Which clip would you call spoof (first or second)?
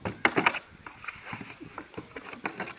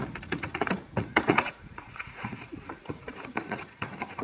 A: second